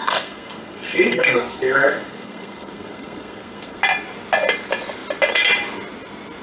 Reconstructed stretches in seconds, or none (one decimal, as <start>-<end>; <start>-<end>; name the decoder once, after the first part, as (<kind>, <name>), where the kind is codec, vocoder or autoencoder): 0.0-3.8 (codec, SNAC)